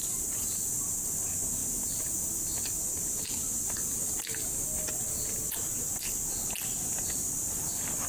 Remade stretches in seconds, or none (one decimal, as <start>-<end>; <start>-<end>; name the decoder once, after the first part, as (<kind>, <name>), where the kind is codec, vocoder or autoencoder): none